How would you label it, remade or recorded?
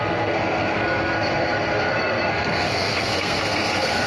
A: remade